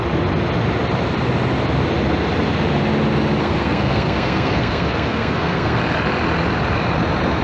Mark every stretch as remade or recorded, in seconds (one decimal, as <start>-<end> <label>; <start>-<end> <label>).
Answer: 0.0-3.4 recorded; 3.4-5.8 remade; 5.8-7.4 recorded

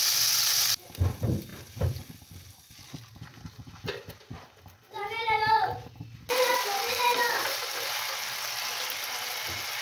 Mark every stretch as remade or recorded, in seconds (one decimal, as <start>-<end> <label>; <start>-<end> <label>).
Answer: 0.0-9.8 recorded

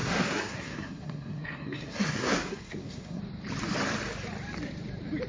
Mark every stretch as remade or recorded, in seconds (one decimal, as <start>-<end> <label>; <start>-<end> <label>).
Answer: 0.0-3.2 remade; 3.2-5.3 recorded

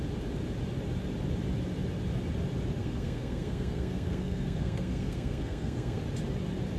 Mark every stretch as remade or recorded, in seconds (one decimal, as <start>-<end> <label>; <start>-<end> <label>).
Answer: 0.0-2.8 recorded; 2.8-6.0 remade; 6.0-6.8 recorded

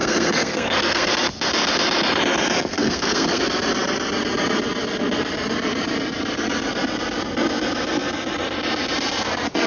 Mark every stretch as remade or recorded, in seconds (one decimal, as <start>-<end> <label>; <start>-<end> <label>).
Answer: 0.0-1.1 remade; 1.1-2.7 recorded; 2.7-3.4 remade; 3.4-9.7 recorded